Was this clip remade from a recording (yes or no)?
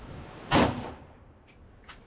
no